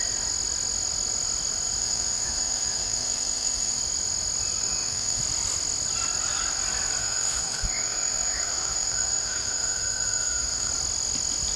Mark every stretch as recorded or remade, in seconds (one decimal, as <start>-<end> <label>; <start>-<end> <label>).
0.0-1.8 recorded; 1.8-3.8 remade; 3.8-4.6 recorded; 4.6-5.2 remade; 5.2-7.0 recorded; 7.0-10.7 remade; 10.7-11.6 recorded